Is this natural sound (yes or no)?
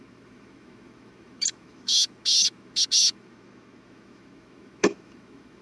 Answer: no